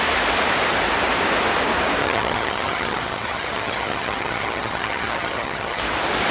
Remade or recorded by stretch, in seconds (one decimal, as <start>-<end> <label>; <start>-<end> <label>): 0.0-2.0 recorded; 2.0-5.8 remade; 5.8-6.3 recorded